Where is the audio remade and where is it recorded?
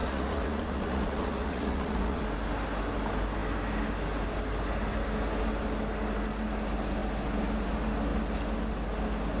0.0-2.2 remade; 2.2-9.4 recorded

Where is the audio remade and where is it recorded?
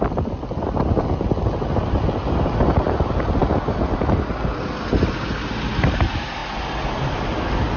0.0-7.8 recorded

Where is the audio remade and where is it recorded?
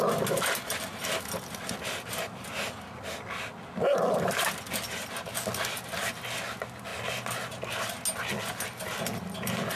0.0-9.8 recorded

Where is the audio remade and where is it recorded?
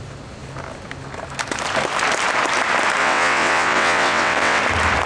0.0-3.0 recorded; 3.0-4.6 remade; 4.6-5.1 recorded